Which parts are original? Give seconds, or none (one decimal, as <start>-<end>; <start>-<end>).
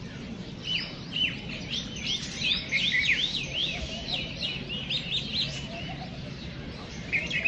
0.0-7.5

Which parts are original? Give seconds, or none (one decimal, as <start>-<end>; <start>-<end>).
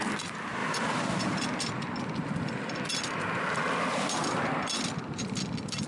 0.0-5.9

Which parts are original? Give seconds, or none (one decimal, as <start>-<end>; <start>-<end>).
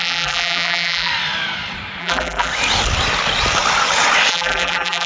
1.1-2.0; 2.5-4.3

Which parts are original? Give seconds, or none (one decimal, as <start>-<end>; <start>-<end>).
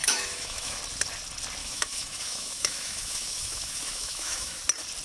0.8-1.6; 4.6-5.0